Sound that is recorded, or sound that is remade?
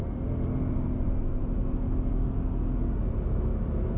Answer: recorded